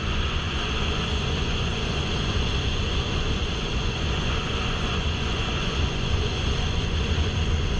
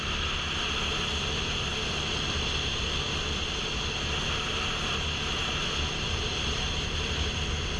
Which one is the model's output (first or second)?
first